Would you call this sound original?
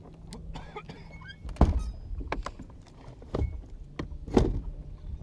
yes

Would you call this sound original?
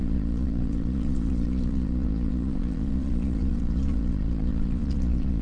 no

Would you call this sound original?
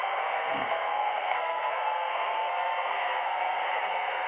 no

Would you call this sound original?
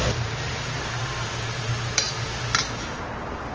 yes